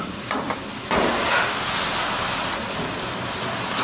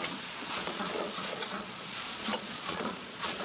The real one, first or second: first